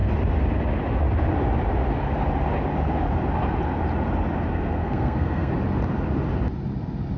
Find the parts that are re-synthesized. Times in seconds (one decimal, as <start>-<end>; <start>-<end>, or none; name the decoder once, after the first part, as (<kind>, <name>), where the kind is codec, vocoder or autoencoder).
4.5-5.5 (codec, SNAC)